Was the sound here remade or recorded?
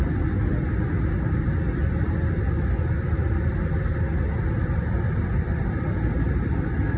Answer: recorded